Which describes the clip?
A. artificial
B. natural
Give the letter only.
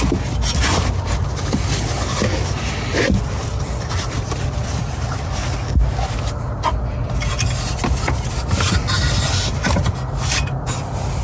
B